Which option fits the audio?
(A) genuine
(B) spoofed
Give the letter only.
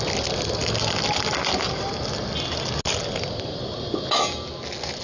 A